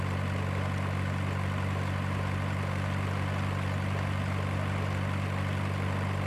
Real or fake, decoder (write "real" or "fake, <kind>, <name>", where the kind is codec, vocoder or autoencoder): real